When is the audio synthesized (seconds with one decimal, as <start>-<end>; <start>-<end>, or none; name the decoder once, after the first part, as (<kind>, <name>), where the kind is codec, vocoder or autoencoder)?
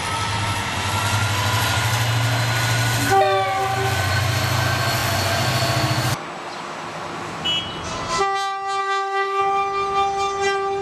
8.8-9.4 (autoencoder, DAC-VAE)